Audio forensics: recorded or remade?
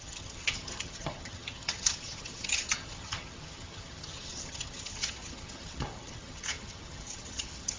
remade